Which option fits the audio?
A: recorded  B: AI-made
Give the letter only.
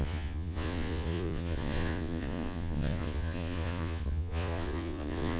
B